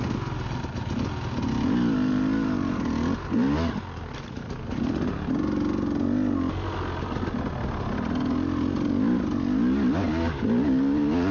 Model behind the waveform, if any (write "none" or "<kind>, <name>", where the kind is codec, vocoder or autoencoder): none